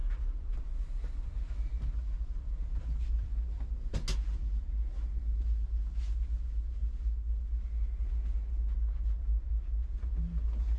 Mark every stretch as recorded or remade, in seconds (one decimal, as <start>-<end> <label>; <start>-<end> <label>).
0.0-10.8 recorded